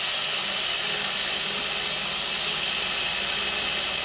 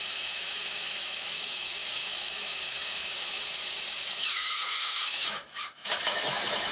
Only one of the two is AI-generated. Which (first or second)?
second